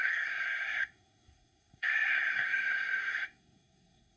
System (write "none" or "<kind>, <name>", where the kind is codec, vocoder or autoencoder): codec, SNAC